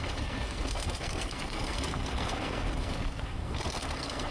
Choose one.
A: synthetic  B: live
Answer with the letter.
A